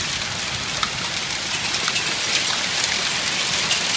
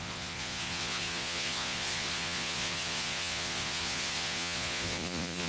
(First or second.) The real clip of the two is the first